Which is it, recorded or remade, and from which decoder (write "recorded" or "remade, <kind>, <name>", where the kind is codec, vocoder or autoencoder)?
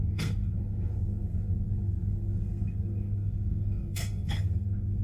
remade, codec, SNAC